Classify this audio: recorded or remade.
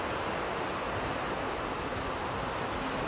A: recorded